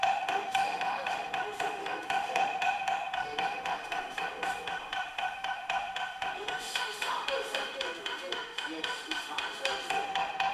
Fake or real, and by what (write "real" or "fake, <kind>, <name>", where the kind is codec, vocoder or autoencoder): fake, autoencoder, DAC-VAE